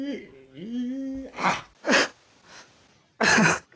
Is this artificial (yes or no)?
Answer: no